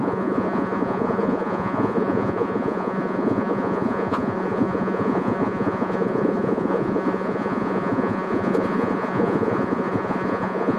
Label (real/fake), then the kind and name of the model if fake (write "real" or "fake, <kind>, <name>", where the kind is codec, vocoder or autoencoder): fake, vocoder, Vocos